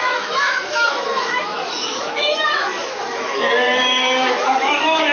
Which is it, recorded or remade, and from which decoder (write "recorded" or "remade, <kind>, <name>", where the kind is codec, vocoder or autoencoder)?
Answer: remade, autoencoder, DAC-VAE